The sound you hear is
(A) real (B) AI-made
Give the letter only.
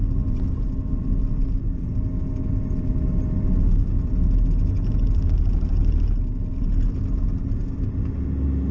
A